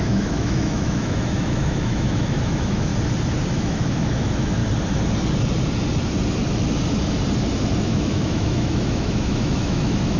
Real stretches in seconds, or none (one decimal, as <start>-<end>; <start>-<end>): 2.9-3.5; 4.6-7.8